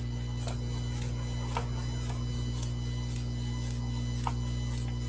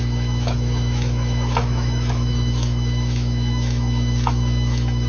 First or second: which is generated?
second